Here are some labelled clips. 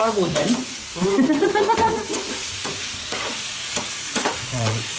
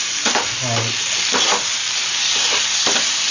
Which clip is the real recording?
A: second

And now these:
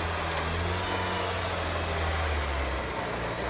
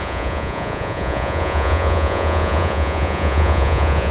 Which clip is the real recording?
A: first